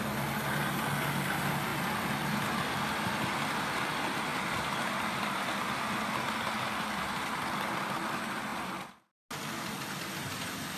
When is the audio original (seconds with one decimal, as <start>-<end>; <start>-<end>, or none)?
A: 0.0-10.8

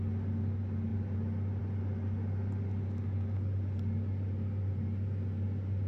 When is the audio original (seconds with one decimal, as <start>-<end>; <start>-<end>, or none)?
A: 0.0-5.9

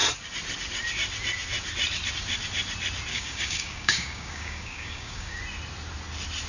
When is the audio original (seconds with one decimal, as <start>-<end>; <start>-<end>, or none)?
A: 0.0-3.1; 5.4-6.5

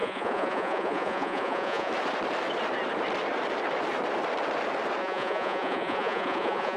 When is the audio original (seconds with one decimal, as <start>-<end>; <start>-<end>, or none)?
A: 1.9-5.0

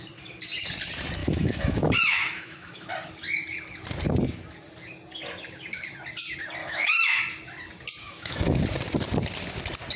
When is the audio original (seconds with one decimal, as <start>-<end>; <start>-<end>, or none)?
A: 0.0-1.2; 2.9-6.6; 7.2-8.0; 8.6-10.0